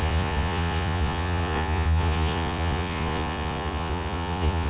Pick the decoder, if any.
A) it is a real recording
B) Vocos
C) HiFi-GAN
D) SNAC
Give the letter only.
B